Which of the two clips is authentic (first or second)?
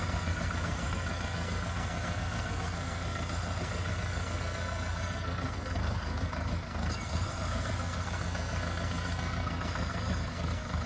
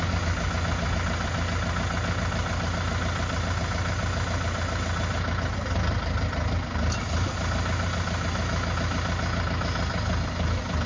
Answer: second